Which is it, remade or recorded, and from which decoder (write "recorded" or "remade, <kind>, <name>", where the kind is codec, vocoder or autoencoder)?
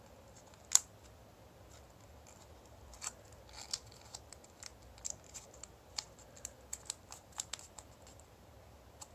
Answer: recorded